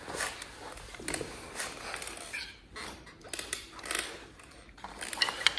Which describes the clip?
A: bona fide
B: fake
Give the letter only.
A